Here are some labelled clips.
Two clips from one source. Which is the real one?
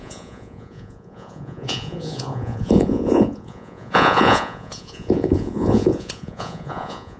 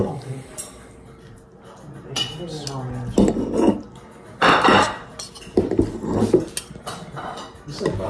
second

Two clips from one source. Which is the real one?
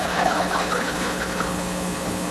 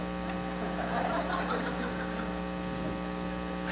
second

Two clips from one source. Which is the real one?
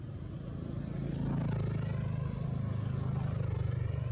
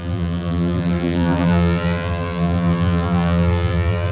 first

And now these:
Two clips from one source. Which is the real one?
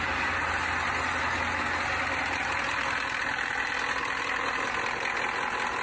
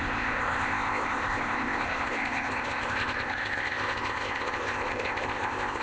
first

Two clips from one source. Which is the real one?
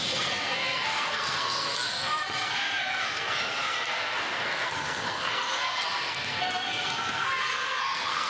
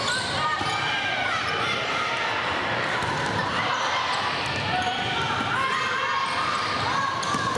second